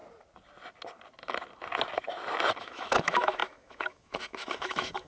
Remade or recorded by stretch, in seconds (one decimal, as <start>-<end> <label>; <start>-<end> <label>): 0.0-2.6 recorded; 2.6-5.1 remade